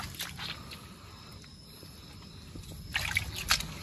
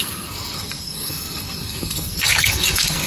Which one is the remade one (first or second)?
second